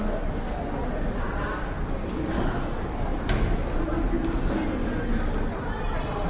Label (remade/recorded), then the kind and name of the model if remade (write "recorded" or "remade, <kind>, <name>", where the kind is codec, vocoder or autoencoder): recorded